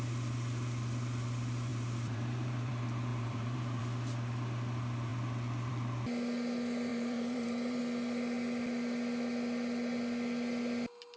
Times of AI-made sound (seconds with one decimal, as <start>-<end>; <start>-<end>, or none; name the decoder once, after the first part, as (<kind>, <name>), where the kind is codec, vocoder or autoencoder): 1.7-2.7 (vocoder, BigVGAN v2); 3.1-3.8; 6.9-7.8